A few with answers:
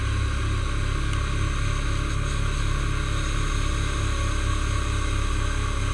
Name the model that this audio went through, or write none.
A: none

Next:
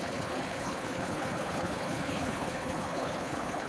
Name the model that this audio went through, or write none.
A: codec, HILCodec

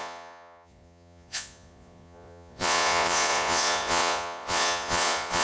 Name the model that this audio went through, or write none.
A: vocoder, Vocos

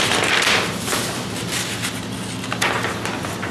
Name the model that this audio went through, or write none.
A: none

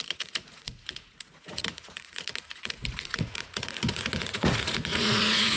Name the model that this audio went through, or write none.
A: vocoder, Vocos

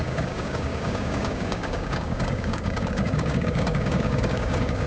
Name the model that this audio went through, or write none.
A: codec, DAC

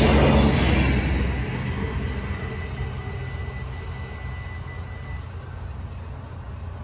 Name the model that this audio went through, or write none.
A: none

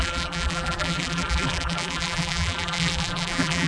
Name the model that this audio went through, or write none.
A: vocoder, BigVGAN v2